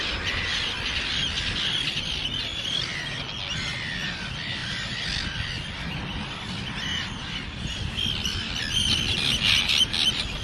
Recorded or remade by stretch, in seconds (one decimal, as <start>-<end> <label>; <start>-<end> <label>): 0.0-10.4 recorded